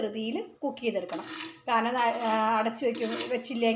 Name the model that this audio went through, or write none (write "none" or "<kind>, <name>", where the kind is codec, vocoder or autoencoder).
none